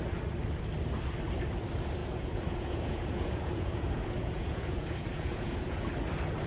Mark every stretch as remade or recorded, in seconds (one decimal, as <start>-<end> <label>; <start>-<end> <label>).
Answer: 0.0-2.0 recorded; 2.0-5.9 remade; 5.9-6.5 recorded